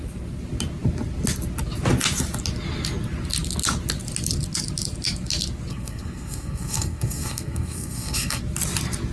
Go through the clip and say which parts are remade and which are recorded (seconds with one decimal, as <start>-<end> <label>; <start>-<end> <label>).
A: 0.0-5.7 recorded; 5.7-8.4 remade; 8.4-9.1 recorded

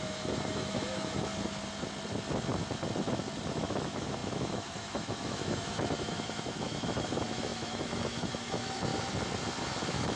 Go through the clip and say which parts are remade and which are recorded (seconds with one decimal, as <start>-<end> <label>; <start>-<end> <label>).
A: 0.0-1.3 remade; 1.3-3.5 recorded; 3.5-8.9 remade; 8.9-9.6 recorded; 9.6-10.2 remade

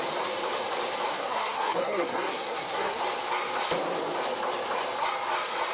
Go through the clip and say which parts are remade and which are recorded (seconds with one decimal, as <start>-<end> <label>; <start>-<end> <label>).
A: 0.0-1.1 recorded; 1.1-3.0 remade; 3.0-5.7 recorded

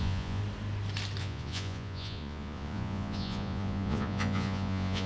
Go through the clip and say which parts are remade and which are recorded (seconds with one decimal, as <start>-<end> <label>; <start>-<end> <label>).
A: 0.0-0.4 remade; 0.4-1.2 recorded; 1.2-5.1 remade